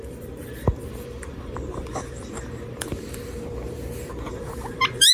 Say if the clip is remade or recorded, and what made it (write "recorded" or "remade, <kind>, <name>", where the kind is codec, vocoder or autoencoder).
remade, vocoder, BigVGAN v2